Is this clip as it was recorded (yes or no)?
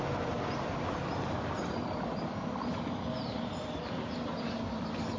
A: yes